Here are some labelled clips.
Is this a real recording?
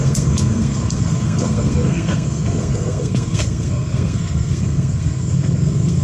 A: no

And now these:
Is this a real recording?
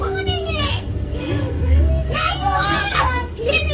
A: no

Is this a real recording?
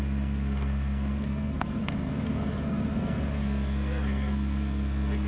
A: no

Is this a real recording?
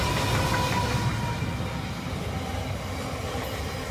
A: yes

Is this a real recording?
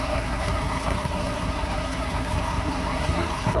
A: no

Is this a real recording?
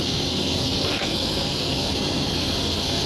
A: no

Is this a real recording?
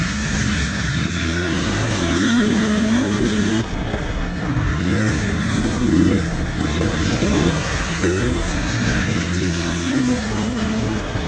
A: no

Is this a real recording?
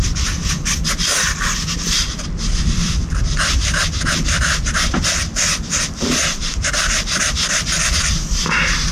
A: yes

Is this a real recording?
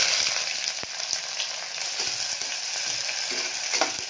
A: yes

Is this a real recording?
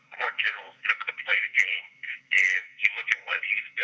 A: no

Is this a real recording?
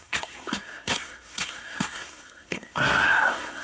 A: no